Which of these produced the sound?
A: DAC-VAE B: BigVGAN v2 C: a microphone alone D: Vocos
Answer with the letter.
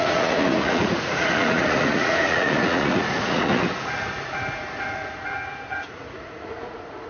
D